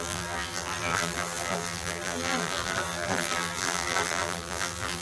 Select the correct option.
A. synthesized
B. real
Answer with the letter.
A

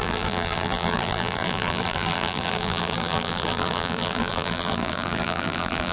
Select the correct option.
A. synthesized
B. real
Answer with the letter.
A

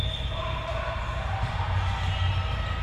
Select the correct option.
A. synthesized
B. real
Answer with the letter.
B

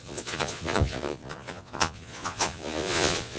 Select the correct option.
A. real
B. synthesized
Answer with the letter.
B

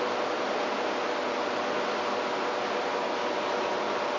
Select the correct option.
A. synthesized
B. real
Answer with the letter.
B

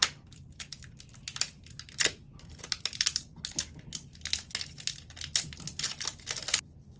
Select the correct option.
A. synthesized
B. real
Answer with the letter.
B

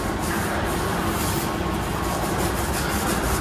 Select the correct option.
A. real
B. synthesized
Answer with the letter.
A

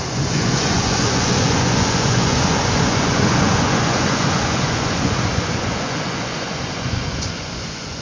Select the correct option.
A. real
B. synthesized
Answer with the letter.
B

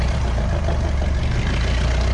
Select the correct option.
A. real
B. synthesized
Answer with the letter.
A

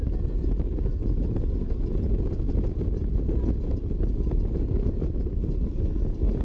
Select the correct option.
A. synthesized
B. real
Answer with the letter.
B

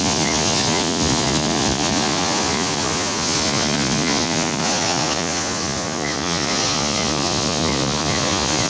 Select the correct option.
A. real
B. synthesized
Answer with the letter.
B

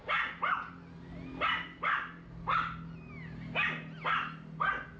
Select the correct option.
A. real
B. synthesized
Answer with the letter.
A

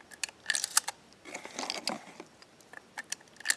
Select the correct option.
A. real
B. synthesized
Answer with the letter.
A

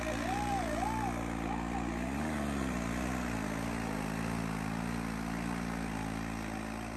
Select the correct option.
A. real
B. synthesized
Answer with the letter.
A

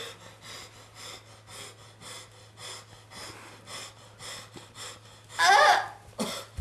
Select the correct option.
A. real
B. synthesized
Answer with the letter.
A